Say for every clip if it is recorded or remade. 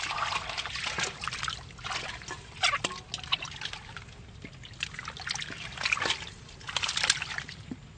recorded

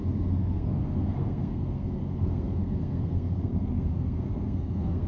remade